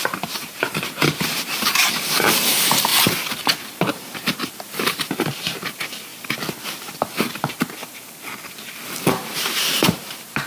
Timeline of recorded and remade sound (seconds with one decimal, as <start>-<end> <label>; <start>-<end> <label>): 0.0-2.9 remade; 2.9-3.6 recorded; 3.6-6.1 remade; 6.1-9.1 recorded; 9.1-10.5 remade